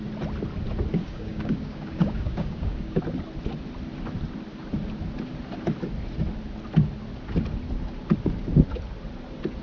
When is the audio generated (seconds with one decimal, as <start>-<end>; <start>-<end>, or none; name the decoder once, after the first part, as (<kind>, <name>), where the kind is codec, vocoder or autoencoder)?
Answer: 1.0-3.0 (codec, DAC)